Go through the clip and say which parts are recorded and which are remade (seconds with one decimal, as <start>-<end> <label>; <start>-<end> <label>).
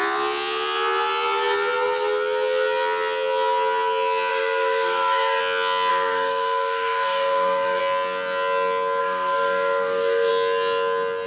0.0-4.3 recorded; 4.3-5.4 remade; 5.4-5.9 recorded; 5.9-7.8 remade; 7.8-9.0 recorded; 9.0-10.3 remade; 10.3-11.3 recorded